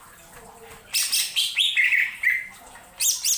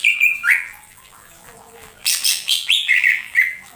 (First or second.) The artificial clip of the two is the second